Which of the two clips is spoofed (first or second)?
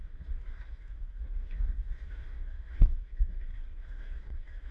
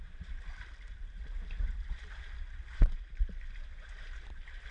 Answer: first